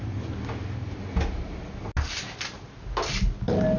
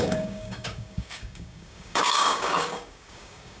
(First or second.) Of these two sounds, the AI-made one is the second